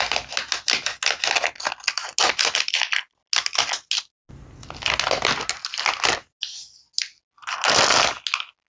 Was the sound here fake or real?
real